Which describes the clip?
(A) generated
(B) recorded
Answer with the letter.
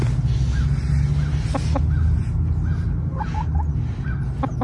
B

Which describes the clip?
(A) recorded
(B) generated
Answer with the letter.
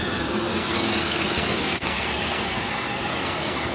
B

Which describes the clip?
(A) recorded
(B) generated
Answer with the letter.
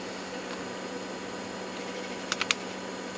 A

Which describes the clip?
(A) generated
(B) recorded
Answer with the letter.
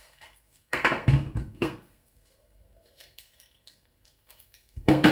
A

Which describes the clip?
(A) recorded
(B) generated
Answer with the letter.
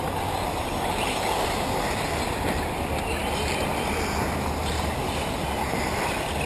A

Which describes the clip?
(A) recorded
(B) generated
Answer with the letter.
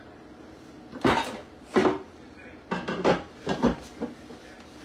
A